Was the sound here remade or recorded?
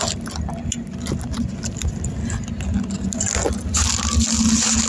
recorded